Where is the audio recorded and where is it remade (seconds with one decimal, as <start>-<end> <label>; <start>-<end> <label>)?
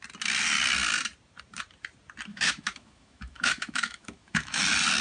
0.0-2.3 recorded; 2.3-4.6 remade; 4.6-5.0 recorded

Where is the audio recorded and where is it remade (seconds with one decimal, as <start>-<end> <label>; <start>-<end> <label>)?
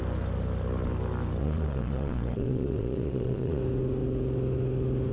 0.0-1.4 recorded; 1.4-3.6 remade; 3.6-5.1 recorded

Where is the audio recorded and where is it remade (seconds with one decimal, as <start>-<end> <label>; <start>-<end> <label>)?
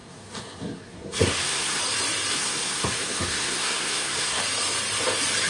0.0-1.8 remade; 1.8-2.3 recorded; 2.3-4.4 remade; 4.4-5.5 recorded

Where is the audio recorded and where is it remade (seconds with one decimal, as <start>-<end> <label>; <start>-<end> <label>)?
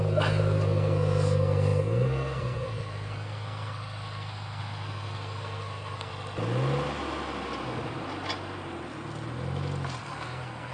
0.0-6.1 remade; 6.1-10.0 recorded; 10.0-10.7 remade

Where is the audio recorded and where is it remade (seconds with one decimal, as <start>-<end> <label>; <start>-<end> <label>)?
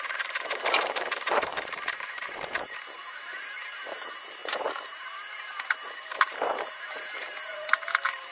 0.0-8.3 remade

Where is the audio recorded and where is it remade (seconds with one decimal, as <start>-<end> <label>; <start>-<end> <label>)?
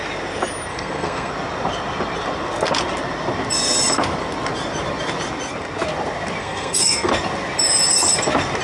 0.0-0.7 recorded; 0.7-1.3 remade; 1.3-6.4 recorded; 6.4-7.1 remade; 7.1-8.6 recorded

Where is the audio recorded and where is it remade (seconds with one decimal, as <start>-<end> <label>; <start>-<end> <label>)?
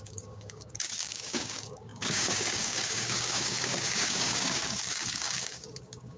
0.0-6.2 remade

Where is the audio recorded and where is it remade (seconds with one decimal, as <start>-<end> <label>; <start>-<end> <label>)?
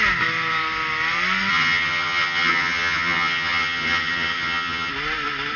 0.0-1.5 recorded; 1.5-4.9 remade; 4.9-5.6 recorded